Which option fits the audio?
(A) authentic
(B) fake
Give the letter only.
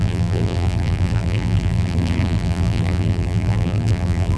B